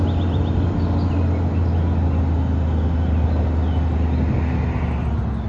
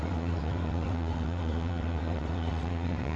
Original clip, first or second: first